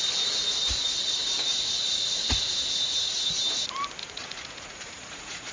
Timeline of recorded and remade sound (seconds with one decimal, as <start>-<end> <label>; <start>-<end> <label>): 0.0-1.5 recorded; 1.5-2.3 remade; 2.3-4.0 recorded; 4.0-5.5 remade